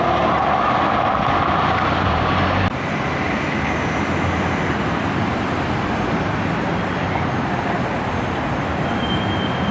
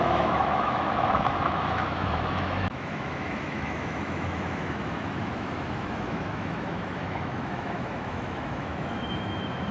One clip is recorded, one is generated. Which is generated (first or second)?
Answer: second